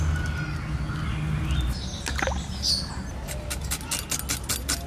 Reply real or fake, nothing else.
real